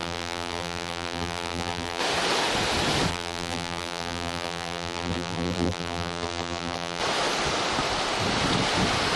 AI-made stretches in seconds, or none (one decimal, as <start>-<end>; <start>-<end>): 0.0-2.0; 3.1-7.0